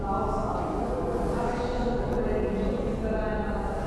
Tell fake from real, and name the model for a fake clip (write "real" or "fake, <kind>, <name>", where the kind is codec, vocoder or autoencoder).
real